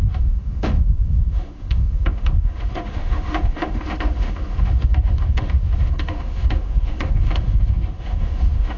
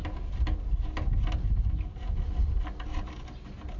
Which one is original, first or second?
second